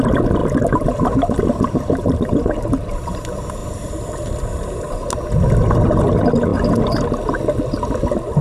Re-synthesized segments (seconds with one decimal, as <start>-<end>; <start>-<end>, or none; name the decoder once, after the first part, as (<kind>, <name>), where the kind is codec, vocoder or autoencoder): 0.4-3.2 (vocoder, BigVGAN v2); 3.6-4.3